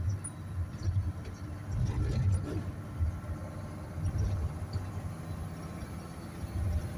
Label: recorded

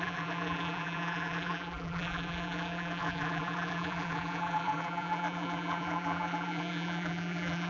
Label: remade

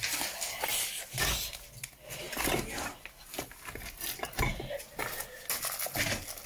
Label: recorded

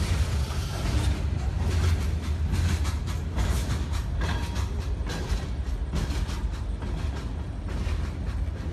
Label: recorded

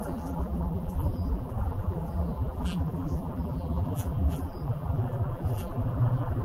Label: remade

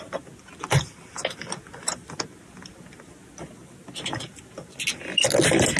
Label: recorded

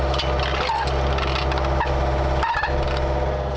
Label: recorded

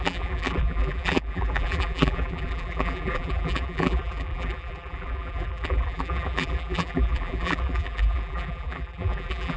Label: remade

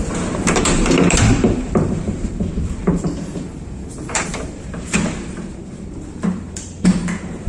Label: remade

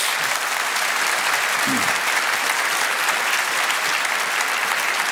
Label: recorded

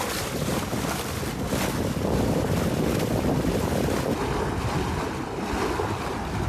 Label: remade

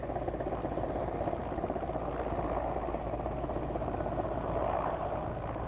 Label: recorded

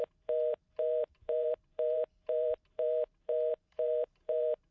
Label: remade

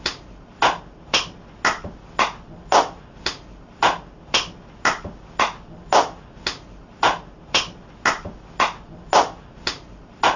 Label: recorded